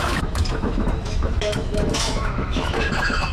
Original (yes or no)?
no